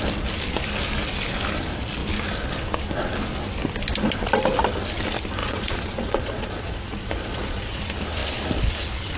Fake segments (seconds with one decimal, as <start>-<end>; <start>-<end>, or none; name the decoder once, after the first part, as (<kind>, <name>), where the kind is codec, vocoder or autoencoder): 5.4-7.8 (vocoder, Vocos)

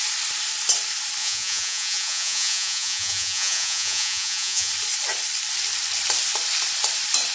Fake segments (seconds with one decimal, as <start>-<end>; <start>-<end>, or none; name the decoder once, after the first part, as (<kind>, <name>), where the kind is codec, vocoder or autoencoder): 1.2-4.7 (vocoder, Vocos)

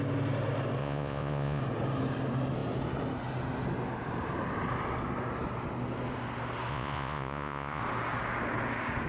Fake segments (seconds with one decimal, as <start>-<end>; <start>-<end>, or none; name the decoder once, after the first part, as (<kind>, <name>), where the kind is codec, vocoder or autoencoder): 0.8-1.6 (vocoder, Vocos); 6.7-7.8